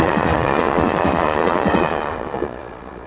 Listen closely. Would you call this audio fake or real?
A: fake